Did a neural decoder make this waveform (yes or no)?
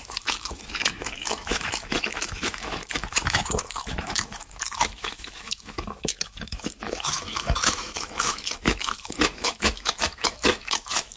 yes